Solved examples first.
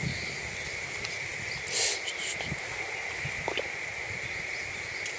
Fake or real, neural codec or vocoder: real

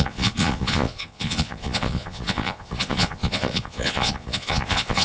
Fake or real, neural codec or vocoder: fake, vocoder, Vocos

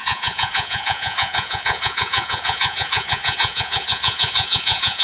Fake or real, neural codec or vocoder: fake, vocoder, Vocos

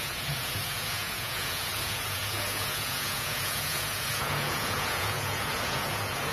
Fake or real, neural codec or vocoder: fake, vocoder, Vocos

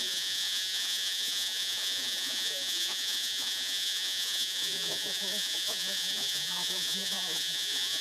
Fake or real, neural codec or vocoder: fake, vocoder, Vocos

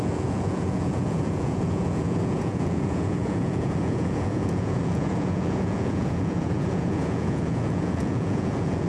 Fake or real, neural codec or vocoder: fake, vocoder, Vocos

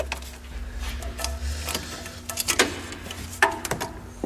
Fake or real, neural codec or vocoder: real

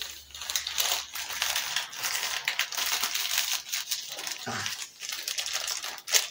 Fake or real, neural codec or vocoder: real